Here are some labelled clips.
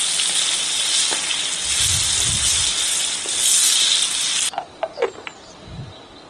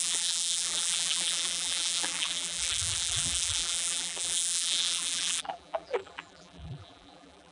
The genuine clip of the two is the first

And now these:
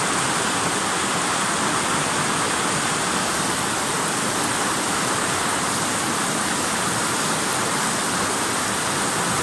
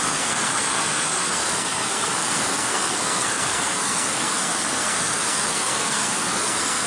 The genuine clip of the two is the first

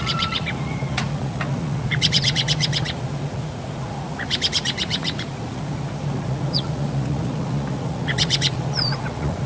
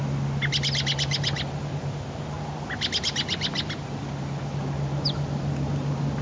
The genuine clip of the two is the second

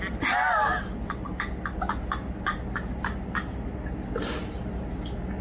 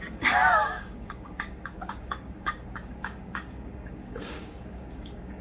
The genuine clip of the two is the first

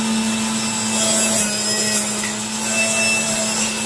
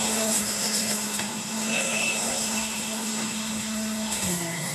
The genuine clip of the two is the first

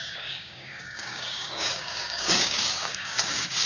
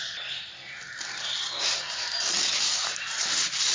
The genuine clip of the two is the second